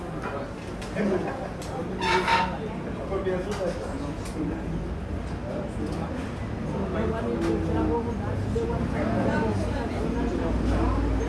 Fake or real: real